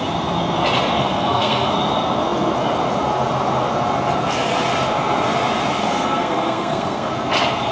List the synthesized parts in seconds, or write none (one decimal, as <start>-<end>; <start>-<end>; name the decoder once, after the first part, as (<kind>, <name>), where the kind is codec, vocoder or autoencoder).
1.0-1.7 (codec, SNAC); 5.8-7.1